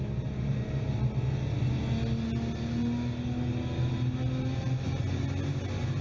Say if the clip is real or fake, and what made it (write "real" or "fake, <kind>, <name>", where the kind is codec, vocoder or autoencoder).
real